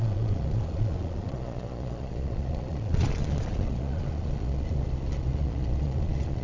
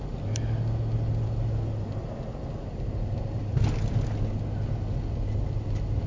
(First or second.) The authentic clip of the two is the second